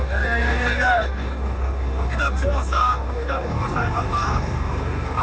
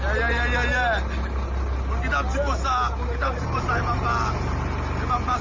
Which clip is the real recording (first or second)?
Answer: second